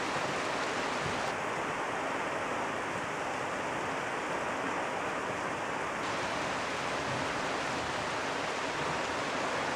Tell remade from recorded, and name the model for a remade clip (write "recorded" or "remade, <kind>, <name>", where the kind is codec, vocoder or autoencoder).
recorded